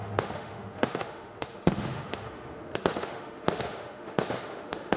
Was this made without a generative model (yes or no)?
no